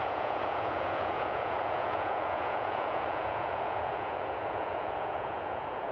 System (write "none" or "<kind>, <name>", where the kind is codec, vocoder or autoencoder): vocoder, Vocos